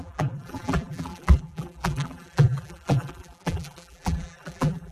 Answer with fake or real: fake